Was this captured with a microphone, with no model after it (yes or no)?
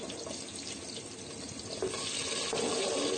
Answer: yes